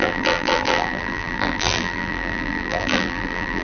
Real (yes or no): no